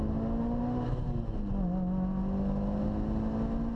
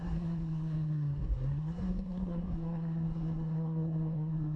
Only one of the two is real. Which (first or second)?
first